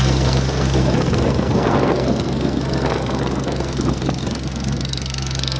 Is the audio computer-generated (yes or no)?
yes